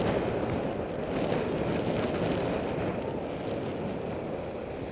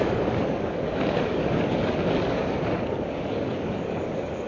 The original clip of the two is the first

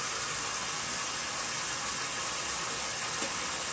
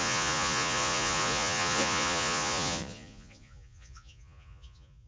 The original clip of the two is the first